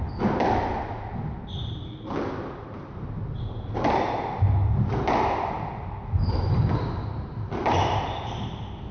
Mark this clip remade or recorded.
recorded